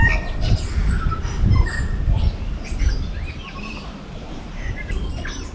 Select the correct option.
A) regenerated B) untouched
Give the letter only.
B